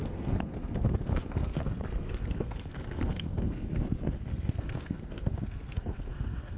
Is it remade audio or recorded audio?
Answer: remade